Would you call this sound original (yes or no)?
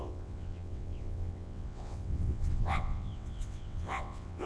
no